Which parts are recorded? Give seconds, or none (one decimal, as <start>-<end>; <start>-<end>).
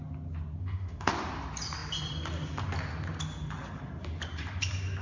0.0-0.6; 1.1-5.0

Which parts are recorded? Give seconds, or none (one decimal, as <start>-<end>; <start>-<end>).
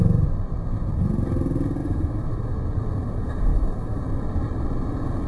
0.0-1.8; 2.6-3.5; 4.0-5.3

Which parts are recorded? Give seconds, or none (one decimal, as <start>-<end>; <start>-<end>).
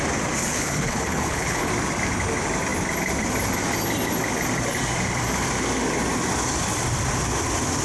0.0-0.4; 1.7-7.8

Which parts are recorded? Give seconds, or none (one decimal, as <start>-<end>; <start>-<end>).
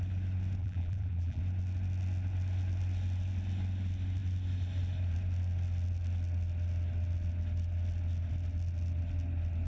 0.0-0.6; 1.4-9.7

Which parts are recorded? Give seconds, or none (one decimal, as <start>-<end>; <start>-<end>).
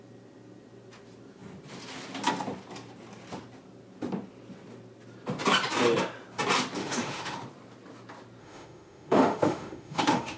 0.0-6.8; 7.4-8.4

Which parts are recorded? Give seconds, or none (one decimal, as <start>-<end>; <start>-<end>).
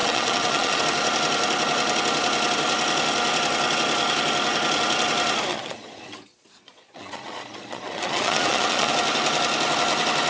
0.8-5.5; 8.9-10.3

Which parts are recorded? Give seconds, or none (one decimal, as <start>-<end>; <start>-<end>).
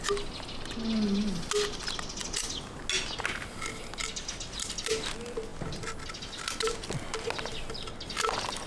0.0-2.2; 2.8-4.0; 4.9-8.7